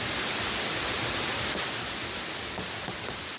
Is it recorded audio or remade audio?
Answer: recorded